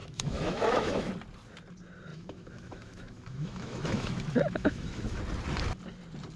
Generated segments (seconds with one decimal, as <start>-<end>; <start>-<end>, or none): 0.0-1.1; 2.1-5.2